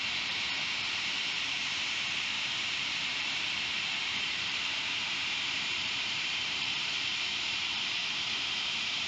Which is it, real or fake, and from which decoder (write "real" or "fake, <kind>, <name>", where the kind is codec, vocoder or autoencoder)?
fake, vocoder, BigVGAN v2